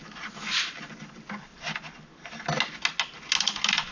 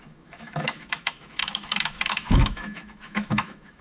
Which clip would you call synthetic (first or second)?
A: second